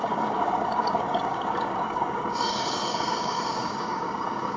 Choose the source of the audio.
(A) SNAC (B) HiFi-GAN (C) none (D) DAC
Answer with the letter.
D